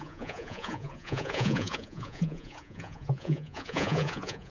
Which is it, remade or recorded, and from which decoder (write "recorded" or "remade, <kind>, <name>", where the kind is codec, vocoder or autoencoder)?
remade, vocoder, Vocos